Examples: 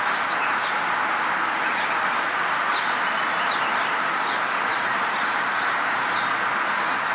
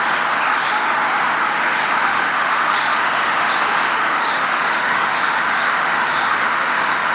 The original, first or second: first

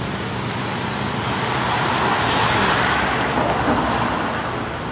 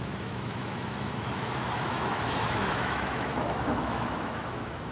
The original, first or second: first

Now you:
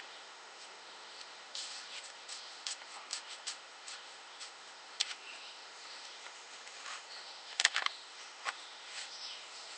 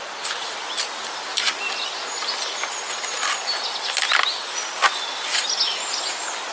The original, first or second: second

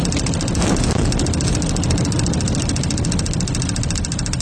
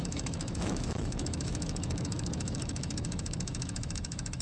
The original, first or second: first